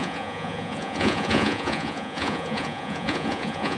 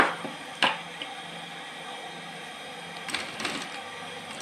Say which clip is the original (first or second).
second